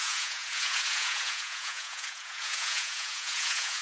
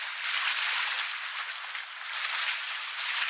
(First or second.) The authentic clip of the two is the second